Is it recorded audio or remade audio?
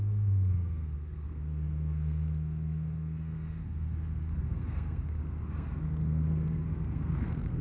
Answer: remade